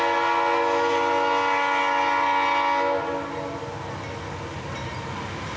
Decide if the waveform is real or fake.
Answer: real